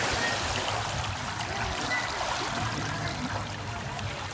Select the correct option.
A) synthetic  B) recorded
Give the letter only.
B